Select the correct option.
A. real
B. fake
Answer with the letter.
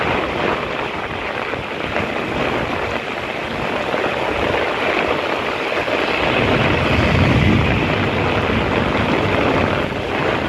A